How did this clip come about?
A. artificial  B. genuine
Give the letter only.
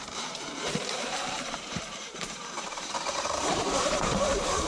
A